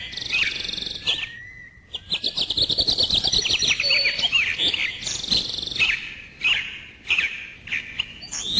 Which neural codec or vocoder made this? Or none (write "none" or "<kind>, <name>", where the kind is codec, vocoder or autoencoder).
vocoder, BigVGAN v2